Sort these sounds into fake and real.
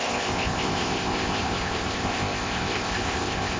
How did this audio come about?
fake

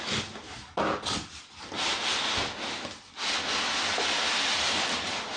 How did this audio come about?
real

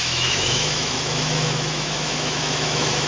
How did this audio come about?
fake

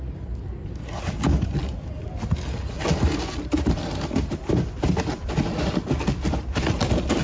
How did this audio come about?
real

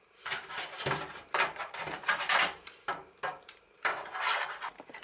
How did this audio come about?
fake